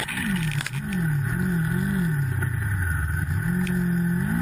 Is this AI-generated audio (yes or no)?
no